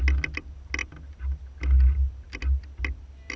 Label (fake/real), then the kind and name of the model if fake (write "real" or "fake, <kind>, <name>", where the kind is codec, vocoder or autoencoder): real